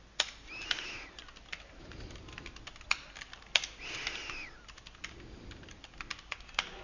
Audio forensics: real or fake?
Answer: real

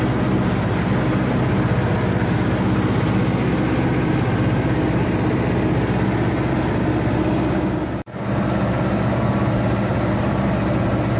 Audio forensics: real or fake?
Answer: real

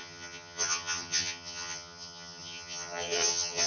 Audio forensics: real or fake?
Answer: fake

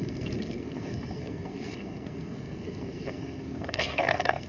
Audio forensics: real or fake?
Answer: fake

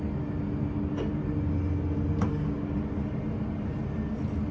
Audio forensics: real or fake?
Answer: real